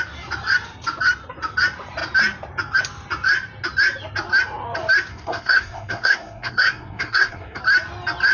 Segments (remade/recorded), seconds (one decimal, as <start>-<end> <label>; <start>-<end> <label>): 0.0-5.1 recorded; 5.1-7.6 remade; 7.6-8.3 recorded

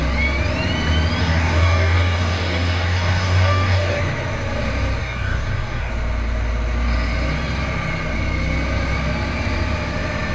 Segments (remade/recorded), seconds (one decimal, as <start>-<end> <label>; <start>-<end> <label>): 0.0-1.2 recorded; 1.2-4.0 remade; 4.0-5.0 recorded; 5.0-5.9 remade; 5.9-10.3 recorded

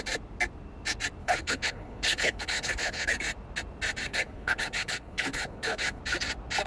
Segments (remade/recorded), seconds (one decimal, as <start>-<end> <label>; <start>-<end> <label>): 0.0-1.2 recorded; 1.2-3.1 remade; 3.1-4.1 recorded; 4.1-6.0 remade; 6.0-6.7 recorded

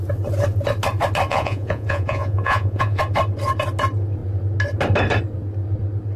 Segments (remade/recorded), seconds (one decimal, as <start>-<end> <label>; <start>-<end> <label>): 0.0-1.3 recorded; 1.3-3.0 remade; 3.0-6.2 recorded

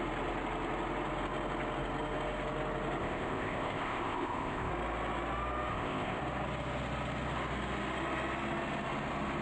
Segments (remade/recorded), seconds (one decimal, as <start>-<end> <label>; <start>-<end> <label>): 0.0-3.0 recorded; 3.0-4.7 remade; 4.7-5.7 recorded; 5.7-6.2 remade; 6.2-9.4 recorded

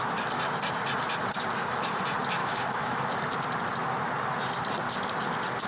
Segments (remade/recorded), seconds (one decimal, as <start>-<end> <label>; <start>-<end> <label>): 0.0-2.4 recorded; 2.4-3.1 remade; 3.1-5.7 recorded

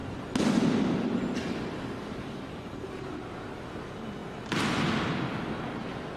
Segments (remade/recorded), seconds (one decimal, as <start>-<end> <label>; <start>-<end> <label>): 0.0-6.2 recorded

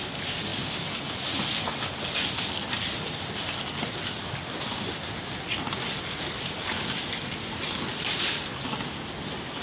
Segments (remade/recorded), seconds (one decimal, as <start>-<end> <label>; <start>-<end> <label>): 0.0-9.6 recorded